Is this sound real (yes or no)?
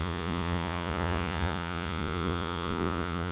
no